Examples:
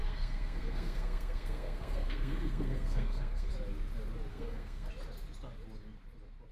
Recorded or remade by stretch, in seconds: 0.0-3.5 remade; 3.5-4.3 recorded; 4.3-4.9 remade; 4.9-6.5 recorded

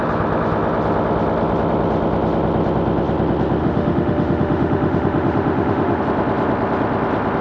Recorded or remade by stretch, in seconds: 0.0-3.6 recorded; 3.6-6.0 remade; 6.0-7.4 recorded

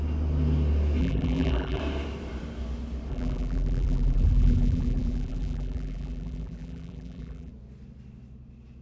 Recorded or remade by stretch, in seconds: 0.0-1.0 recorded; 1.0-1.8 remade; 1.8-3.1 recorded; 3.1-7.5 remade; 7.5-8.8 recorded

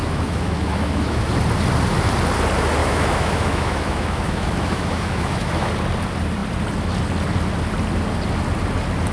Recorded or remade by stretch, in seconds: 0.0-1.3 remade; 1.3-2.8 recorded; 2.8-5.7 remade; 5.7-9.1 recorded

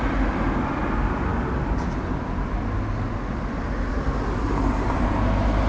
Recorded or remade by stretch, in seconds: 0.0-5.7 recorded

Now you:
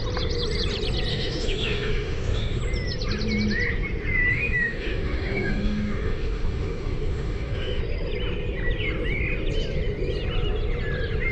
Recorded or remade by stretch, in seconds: 0.0-1.1 recorded; 1.1-2.6 remade; 2.6-4.3 recorded; 4.3-7.8 remade; 7.8-11.3 recorded

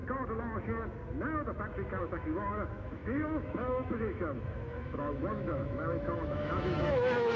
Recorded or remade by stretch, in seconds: 0.0-2.0 recorded; 2.0-7.4 remade